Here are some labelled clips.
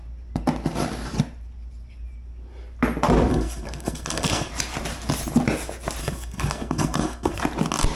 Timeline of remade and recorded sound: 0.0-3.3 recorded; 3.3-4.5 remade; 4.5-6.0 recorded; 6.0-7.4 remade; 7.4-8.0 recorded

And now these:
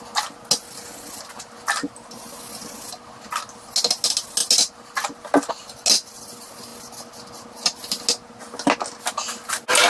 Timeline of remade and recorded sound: 0.0-9.9 recorded

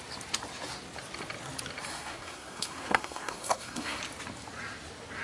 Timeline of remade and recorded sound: 0.0-1.9 recorded; 1.9-4.0 remade; 4.0-5.2 recorded